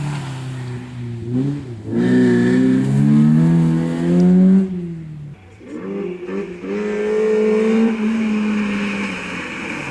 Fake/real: real